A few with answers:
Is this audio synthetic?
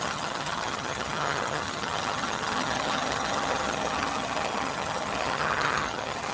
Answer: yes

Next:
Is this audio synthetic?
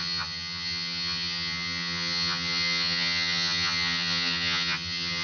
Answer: yes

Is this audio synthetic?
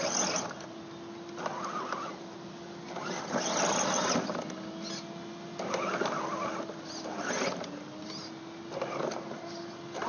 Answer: no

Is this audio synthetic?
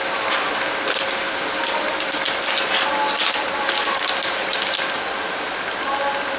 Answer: no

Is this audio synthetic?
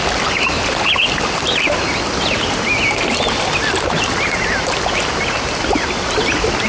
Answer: no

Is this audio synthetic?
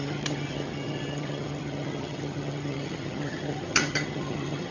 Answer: yes